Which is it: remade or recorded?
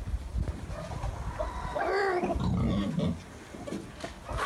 recorded